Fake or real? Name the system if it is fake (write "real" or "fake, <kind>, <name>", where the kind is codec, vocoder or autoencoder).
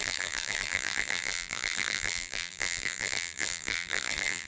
fake, vocoder, BigVGAN v2